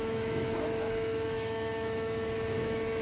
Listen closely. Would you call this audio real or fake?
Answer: fake